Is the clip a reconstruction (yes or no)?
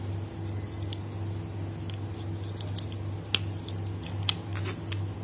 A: no